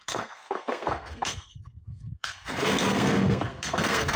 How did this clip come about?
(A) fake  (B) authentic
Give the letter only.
A